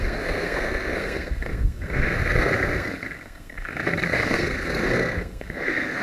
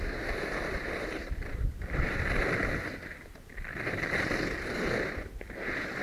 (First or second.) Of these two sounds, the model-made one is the first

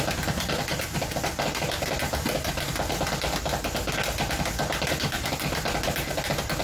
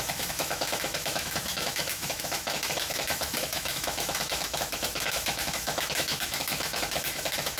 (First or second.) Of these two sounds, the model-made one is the second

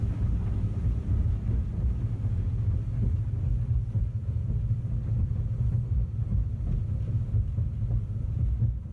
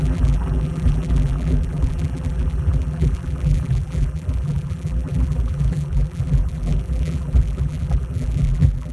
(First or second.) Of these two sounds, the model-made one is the second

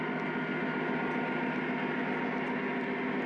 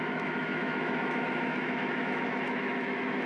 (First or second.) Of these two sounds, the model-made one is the second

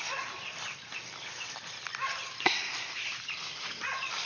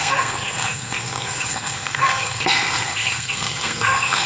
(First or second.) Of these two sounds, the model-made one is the second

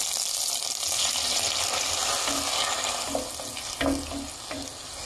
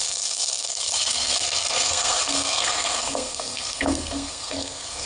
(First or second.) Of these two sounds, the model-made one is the second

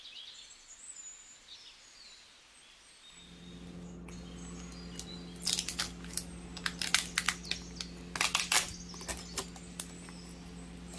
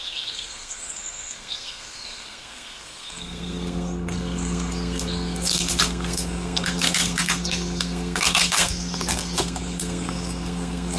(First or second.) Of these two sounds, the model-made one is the second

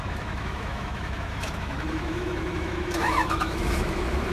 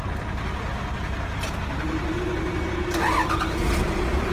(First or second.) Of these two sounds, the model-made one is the first